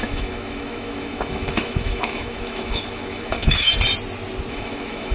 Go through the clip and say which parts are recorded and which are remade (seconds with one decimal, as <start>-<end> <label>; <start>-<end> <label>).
0.0-3.7 remade; 3.7-4.5 recorded; 4.5-5.1 remade